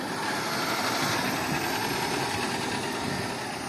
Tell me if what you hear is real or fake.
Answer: real